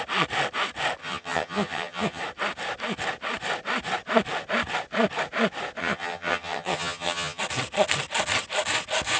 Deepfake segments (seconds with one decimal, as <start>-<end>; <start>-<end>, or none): 1.0-2.2; 5.8-7.4